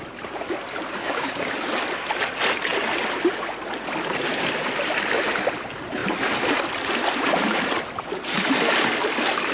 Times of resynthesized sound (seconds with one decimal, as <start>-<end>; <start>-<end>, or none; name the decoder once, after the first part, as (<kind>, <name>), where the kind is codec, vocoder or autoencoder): 1.0-1.5 (codec, DAC)